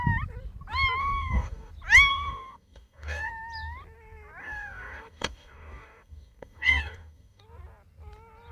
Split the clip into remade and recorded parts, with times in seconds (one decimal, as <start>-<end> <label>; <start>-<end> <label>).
0.0-1.0 recorded; 1.0-1.7 remade; 1.7-2.1 recorded; 2.1-3.3 remade; 3.3-4.4 recorded; 4.4-7.4 remade; 7.4-8.5 recorded

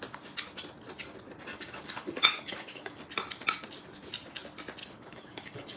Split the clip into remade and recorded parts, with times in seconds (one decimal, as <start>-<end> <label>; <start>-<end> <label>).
0.0-1.5 recorded; 1.5-3.0 remade; 3.0-4.8 recorded; 4.8-5.8 remade

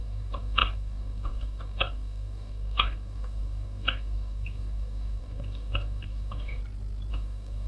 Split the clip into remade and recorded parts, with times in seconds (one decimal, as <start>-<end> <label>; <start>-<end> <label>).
0.0-6.6 remade; 6.6-7.1 recorded; 7.1-7.7 remade

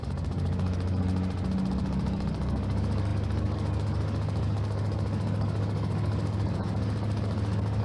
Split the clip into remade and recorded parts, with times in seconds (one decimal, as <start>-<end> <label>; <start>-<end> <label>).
0.0-1.1 remade; 1.1-1.7 recorded; 1.7-7.8 remade

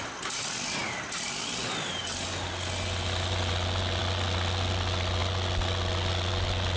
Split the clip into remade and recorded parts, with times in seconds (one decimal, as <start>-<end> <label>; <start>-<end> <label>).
0.0-6.8 recorded

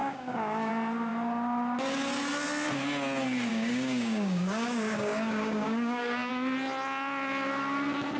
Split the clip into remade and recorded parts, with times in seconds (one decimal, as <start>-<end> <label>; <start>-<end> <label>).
0.0-0.7 remade; 0.7-3.5 recorded; 3.5-6.3 remade; 6.3-8.2 recorded

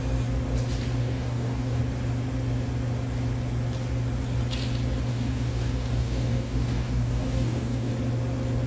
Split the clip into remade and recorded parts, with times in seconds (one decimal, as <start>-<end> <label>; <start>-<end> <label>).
0.0-1.0 recorded; 1.0-1.8 remade; 1.8-5.1 recorded; 5.1-7.9 remade; 7.9-8.7 recorded